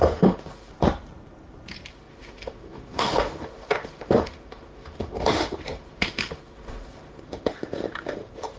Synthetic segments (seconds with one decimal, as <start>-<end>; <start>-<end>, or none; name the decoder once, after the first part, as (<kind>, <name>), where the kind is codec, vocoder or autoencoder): 0.0-0.7 (autoencoder, DAC-VAE); 1.9-8.6